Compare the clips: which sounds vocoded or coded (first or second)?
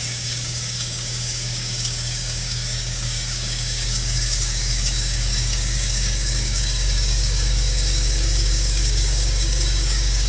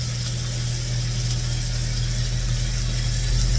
first